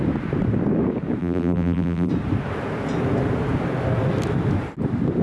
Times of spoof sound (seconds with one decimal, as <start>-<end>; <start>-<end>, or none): 1.2-2.1